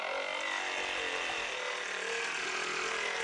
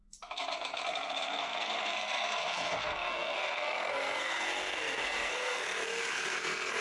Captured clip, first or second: first